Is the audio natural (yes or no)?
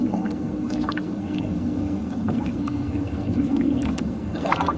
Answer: no